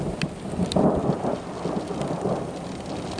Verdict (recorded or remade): recorded